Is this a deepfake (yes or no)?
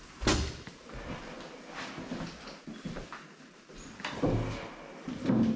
no